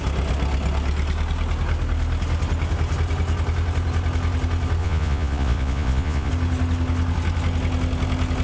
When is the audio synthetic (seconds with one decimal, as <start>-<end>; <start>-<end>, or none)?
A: 4.8-6.3